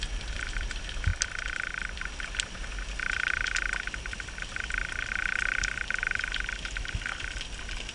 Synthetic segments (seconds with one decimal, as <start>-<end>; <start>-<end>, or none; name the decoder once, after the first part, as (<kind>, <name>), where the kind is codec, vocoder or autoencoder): 0.0-5.2 (vocoder, BigVGAN v2); 7.1-7.9